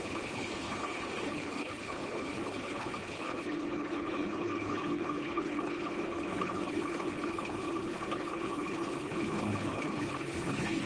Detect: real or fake fake